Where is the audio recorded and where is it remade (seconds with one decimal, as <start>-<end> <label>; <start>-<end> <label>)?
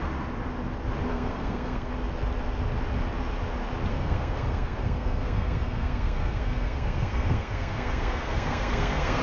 0.0-1.1 recorded; 1.1-1.9 remade; 1.9-3.9 recorded; 3.9-9.2 remade